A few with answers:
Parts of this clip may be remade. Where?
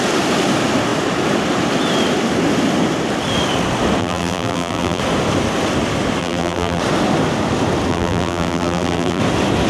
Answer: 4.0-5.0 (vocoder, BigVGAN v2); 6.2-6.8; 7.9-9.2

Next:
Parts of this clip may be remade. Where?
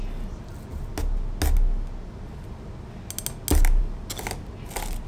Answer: none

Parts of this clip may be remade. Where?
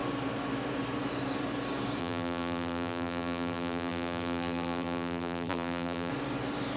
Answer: 2.0-6.1 (vocoder, BigVGAN v2)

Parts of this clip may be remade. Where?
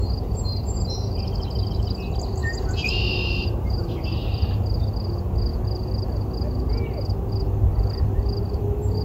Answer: 0.0-1.2 (vocoder, BigVGAN v2); 2.4-4.3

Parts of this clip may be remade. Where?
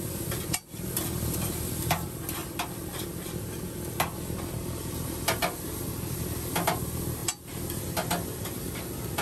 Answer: none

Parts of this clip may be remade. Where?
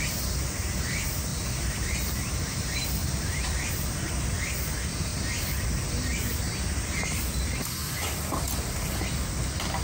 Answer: 3.0-3.7 (vocoder, BigVGAN v2)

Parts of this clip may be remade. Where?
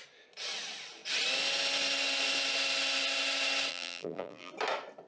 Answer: 3.7-4.5 (vocoder, BigVGAN v2)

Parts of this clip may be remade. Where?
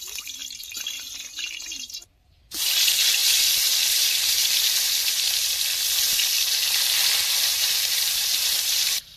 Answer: 0.0-0.4 (vocoder, BigVGAN v2); 1.2-3.2; 7.5-9.2